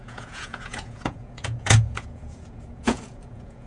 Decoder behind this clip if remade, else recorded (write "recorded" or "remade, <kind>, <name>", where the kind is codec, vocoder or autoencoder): remade, vocoder, Vocos